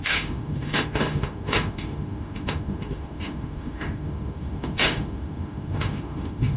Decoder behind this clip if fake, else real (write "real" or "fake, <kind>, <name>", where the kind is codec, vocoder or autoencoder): fake, autoencoder, DAC-VAE